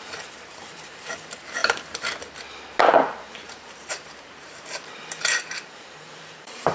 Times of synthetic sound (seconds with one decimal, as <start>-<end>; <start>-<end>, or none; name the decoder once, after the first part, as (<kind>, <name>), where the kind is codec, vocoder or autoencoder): 0.0-1.6 (vocoder, BigVGAN v2); 2.9-6.7